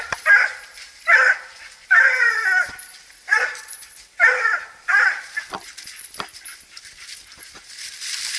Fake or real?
fake